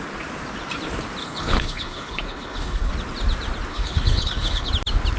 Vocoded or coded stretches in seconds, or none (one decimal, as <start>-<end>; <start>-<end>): 1.2-2.9; 3.7-4.7